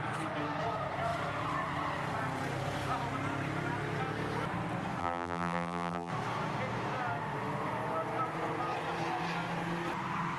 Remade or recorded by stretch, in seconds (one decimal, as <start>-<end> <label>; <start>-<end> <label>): 0.0-5.0 recorded; 5.0-6.1 remade; 6.1-10.4 recorded